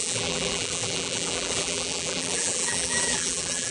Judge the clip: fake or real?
fake